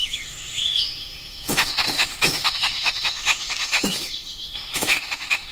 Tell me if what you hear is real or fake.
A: fake